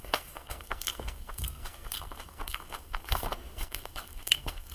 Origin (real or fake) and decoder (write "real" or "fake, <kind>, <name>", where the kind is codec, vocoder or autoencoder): fake, codec, SNAC